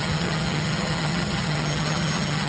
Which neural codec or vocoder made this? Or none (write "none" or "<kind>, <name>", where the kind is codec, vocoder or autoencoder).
vocoder, HiFi-GAN